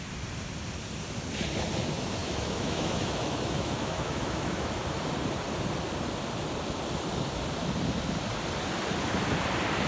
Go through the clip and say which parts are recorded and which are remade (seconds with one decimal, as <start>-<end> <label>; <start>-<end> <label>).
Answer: 0.0-2.2 recorded; 2.2-4.7 remade; 4.7-9.9 recorded